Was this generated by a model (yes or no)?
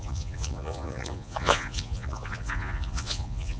yes